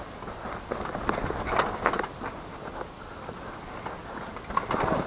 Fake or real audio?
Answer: real